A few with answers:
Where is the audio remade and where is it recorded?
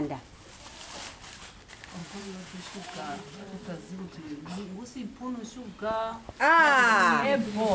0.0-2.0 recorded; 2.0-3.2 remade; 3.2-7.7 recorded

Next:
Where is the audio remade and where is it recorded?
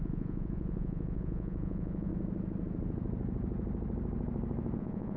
0.0-2.1 remade; 2.1-4.8 recorded; 4.8-5.2 remade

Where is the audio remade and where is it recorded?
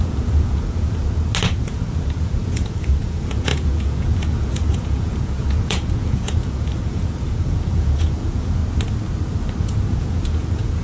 0.0-1.0 remade; 1.0-1.5 recorded; 1.5-8.6 remade; 8.6-9.6 recorded; 9.6-10.8 remade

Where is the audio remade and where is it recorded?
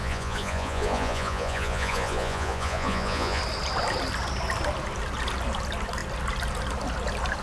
0.0-3.4 remade; 3.4-7.4 recorded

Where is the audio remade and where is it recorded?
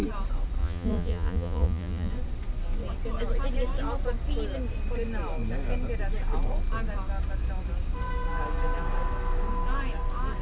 0.0-0.6 recorded; 0.6-2.1 remade; 2.1-10.4 recorded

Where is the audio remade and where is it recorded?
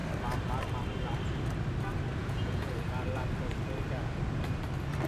0.0-2.2 recorded; 2.2-2.7 remade; 2.7-5.1 recorded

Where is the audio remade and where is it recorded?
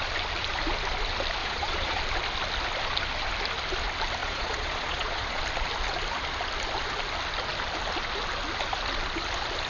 0.0-1.4 recorded; 1.4-2.0 remade; 2.0-4.2 recorded; 4.2-5.4 remade; 5.4-9.7 recorded